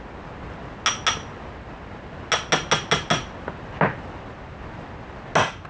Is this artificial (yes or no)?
no